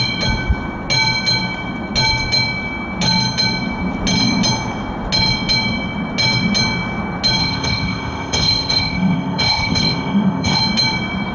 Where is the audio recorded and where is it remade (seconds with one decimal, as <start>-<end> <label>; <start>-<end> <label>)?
0.0-7.4 recorded; 7.4-10.6 remade; 10.6-11.3 recorded